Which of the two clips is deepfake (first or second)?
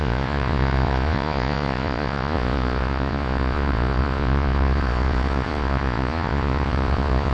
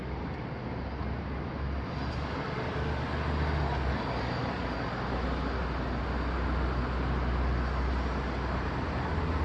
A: first